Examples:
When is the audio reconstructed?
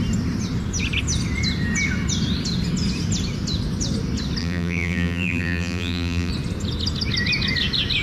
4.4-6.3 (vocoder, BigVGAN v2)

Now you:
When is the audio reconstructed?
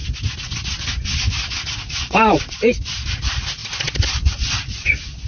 none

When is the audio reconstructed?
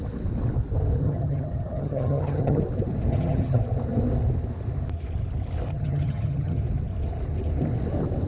1.0-2.6 (vocoder, HiFi-GAN); 3.1-3.6; 5.7-6.6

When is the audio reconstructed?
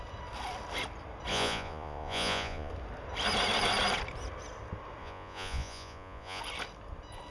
1.3-2.7 (vocoder, Vocos); 5.0-6.4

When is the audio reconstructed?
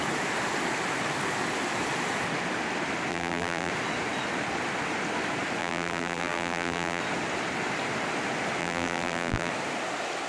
3.1-3.7 (vocoder, BigVGAN v2); 5.6-7.0; 8.6-9.5